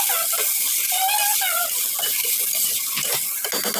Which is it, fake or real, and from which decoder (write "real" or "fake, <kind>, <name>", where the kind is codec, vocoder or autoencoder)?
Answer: real